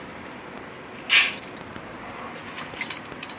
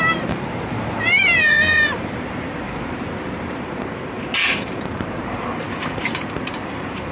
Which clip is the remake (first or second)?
second